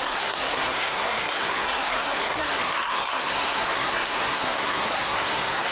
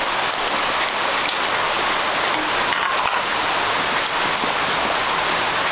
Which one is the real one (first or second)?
second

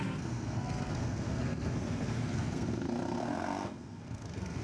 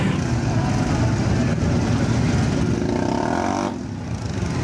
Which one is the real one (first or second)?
second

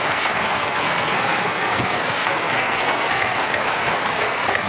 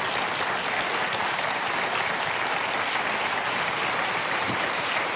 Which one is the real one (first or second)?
second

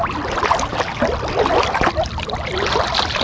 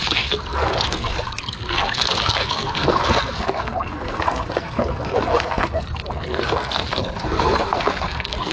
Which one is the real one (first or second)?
first